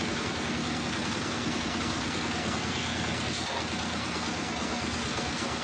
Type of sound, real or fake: fake